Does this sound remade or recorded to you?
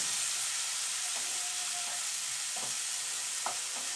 recorded